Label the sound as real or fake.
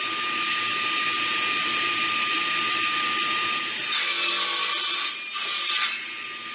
real